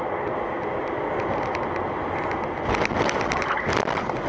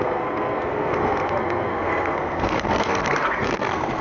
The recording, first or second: first